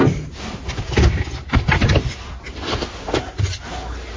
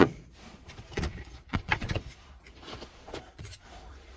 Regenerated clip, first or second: second